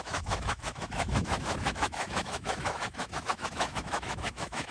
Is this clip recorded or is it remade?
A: remade